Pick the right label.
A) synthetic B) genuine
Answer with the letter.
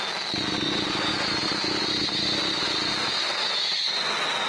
B